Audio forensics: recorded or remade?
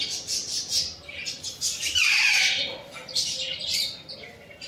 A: remade